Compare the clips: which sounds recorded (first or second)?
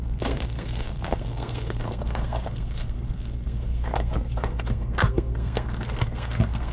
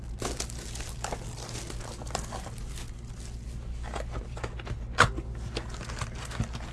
second